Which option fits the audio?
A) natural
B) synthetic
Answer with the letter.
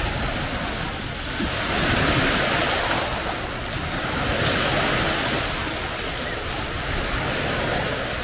A